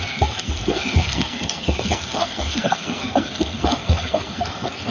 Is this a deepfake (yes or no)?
yes